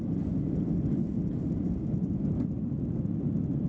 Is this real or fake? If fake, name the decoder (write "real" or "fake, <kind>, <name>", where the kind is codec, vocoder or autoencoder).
real